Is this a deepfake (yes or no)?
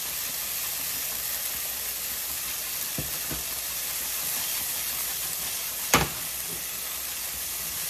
no